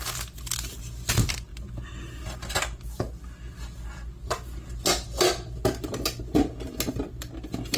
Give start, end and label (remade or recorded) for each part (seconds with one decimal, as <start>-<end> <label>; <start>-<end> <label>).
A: 0.0-1.5 remade; 1.5-6.2 recorded; 6.2-7.8 remade